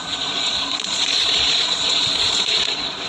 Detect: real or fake fake